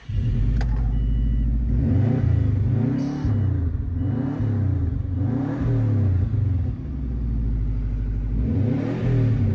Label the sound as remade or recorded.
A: recorded